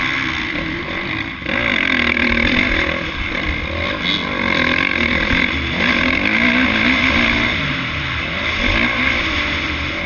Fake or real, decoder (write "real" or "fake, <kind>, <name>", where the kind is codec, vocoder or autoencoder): real